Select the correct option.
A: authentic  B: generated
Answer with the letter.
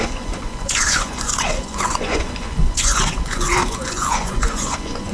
B